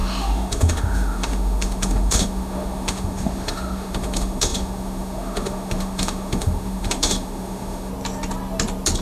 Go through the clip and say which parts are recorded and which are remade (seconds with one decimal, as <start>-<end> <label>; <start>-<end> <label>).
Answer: 0.0-7.9 remade; 7.9-9.0 recorded